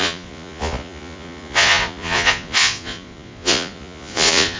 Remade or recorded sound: remade